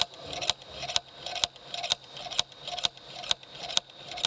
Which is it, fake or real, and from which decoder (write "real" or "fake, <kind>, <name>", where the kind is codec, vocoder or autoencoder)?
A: real